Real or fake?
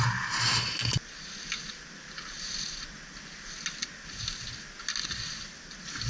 real